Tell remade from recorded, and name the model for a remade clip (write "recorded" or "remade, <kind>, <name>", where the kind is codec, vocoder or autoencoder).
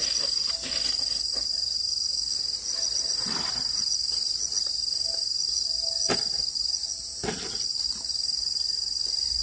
recorded